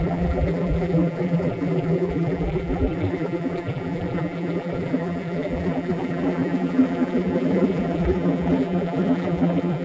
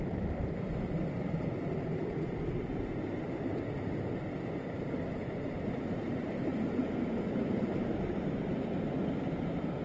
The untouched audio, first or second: second